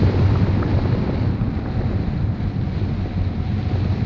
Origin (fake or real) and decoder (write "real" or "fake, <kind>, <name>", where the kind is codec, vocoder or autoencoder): fake, vocoder, BigVGAN v2